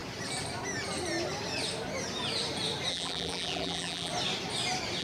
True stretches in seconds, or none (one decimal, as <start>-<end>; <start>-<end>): 0.0-2.9; 4.1-5.0